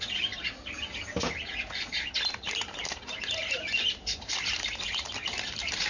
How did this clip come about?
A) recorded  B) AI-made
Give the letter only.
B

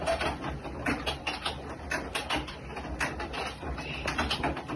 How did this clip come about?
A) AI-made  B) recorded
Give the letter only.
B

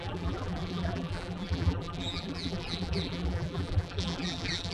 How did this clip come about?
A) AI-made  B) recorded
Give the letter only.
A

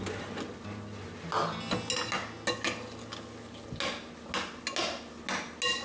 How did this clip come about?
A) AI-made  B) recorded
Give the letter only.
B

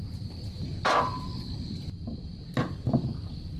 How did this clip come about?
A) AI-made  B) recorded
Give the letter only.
A